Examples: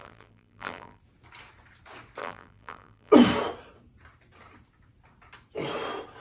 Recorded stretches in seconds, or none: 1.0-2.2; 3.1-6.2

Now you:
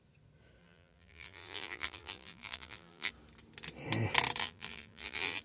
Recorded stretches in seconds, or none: 0.0-0.6; 3.1-4.4

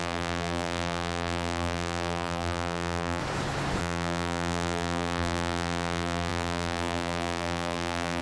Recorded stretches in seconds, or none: 3.2-3.8

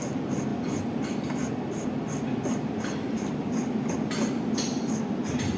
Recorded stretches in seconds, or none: 0.0-5.6